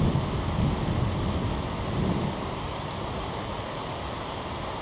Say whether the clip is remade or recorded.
recorded